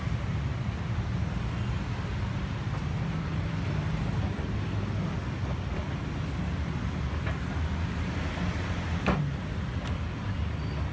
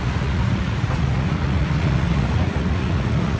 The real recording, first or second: first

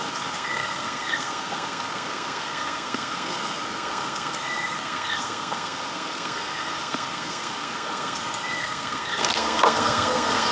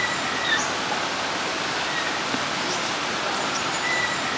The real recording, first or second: second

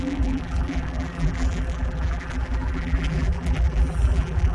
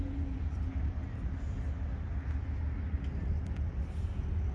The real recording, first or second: second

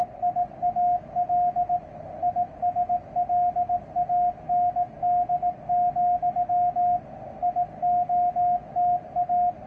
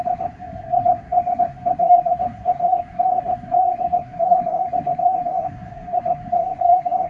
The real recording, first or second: first